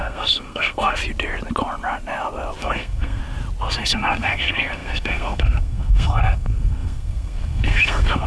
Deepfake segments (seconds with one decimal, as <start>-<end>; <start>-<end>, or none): 0.0-1.0; 2.6-3.2; 3.7-8.3